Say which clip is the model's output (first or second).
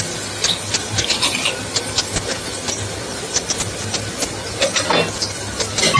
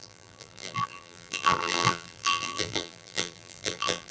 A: second